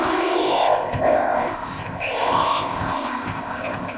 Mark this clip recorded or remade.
remade